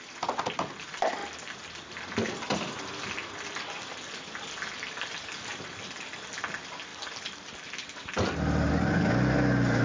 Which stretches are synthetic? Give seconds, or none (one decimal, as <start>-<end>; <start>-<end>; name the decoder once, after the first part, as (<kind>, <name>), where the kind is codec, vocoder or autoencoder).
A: 1.2-5.6 (vocoder, BigVGAN v2); 6.9-8.7